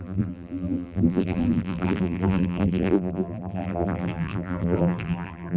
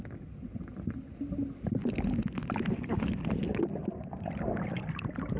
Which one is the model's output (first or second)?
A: first